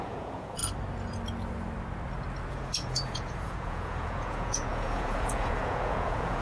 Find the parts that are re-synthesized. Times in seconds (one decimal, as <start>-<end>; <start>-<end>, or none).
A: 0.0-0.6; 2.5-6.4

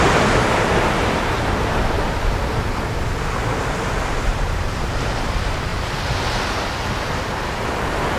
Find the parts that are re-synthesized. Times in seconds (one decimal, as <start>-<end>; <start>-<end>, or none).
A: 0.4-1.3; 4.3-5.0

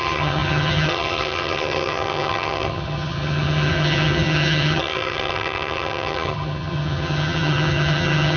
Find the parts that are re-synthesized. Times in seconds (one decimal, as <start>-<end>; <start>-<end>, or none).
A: 0.0-8.4

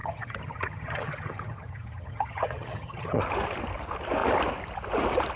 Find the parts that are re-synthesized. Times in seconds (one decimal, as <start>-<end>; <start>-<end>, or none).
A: 0.0-3.2